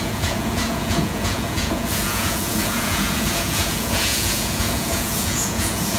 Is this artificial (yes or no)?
yes